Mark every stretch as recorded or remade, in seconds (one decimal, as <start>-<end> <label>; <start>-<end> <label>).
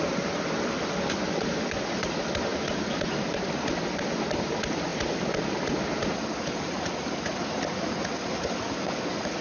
0.0-9.4 recorded